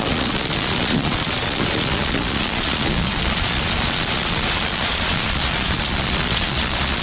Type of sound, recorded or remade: remade